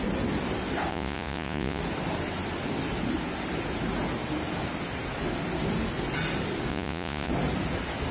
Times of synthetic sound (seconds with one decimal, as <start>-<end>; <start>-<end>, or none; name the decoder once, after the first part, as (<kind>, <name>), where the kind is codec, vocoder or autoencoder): 0.9-1.8 (vocoder, Vocos); 6.7-7.3